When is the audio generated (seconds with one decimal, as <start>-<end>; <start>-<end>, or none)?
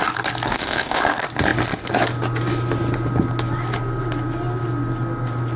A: 0.5-1.0